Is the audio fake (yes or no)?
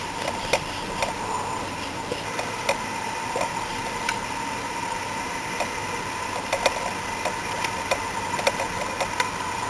yes